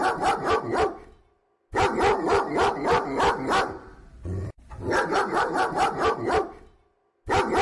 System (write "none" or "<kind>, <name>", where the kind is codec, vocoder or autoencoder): none